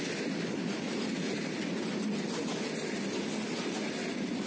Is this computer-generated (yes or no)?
no